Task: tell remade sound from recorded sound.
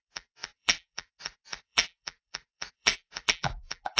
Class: remade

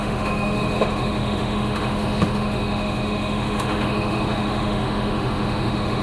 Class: remade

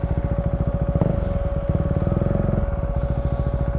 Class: recorded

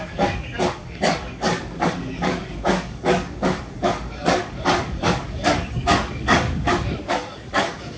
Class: remade